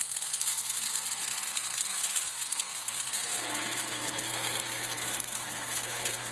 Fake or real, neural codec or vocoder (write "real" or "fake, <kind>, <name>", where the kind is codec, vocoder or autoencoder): fake, codec, SNAC